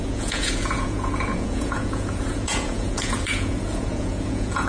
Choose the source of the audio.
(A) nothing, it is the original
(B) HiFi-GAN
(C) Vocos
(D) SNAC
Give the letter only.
C